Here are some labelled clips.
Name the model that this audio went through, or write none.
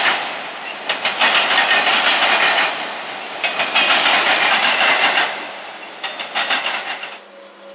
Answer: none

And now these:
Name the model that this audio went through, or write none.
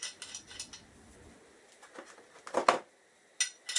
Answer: none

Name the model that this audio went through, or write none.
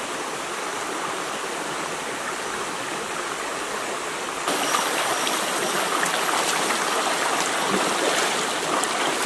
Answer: none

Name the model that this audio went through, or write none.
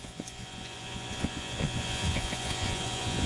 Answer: vocoder, Vocos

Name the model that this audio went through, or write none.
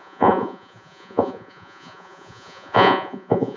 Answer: vocoder, Vocos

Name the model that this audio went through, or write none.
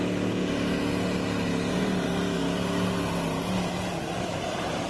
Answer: none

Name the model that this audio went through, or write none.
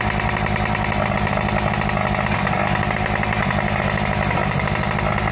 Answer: none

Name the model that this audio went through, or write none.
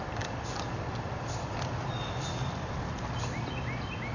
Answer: none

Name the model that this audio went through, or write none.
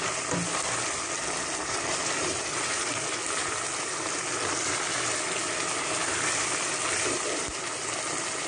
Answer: none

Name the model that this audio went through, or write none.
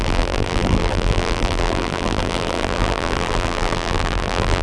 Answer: vocoder, BigVGAN v2